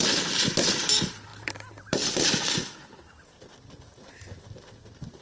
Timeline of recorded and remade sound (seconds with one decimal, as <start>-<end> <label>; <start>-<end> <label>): 0.0-1.3 recorded; 1.3-2.3 remade; 2.3-5.2 recorded